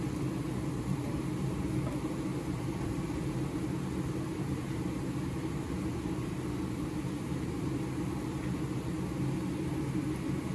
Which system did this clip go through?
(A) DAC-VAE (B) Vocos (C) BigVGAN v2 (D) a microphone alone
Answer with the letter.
D